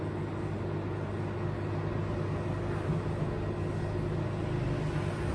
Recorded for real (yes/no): yes